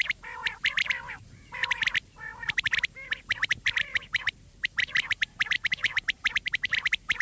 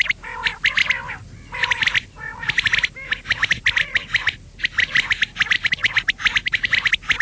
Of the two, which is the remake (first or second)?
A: first